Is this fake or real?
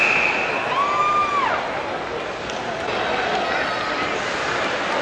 real